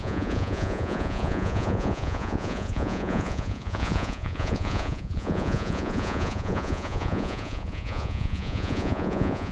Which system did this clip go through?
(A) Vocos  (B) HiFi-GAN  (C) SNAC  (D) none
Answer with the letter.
A